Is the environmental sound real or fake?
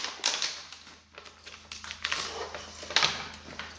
real